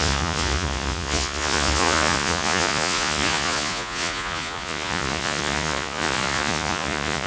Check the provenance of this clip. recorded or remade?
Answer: remade